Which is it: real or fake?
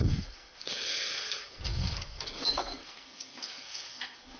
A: fake